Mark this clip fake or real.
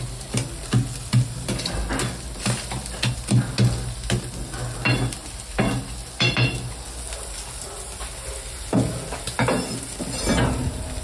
real